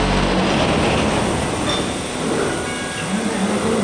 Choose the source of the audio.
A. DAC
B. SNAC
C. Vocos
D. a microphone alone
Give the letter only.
D